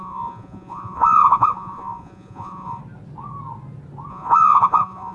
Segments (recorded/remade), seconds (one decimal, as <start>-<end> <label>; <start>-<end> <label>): 0.0-2.8 remade; 2.8-4.1 recorded; 4.1-5.1 remade